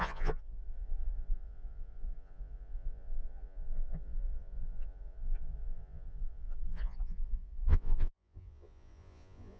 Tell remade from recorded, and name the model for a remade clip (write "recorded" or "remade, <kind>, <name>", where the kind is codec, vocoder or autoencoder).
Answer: remade, vocoder, Vocos